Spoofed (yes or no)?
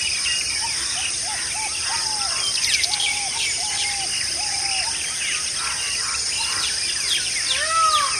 no